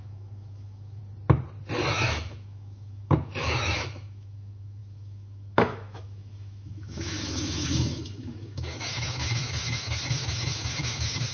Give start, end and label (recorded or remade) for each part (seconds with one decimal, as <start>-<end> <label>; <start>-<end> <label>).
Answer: 0.0-1.0 remade; 1.0-1.9 recorded; 1.9-11.3 remade

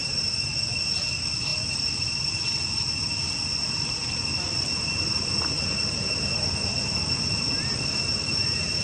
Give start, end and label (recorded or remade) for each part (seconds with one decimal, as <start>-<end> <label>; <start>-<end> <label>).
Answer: 0.0-0.5 remade; 0.5-8.8 recorded